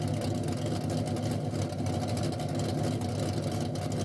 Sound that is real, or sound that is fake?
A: real